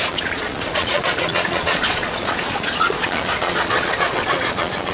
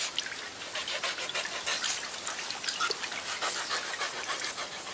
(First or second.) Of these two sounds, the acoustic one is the second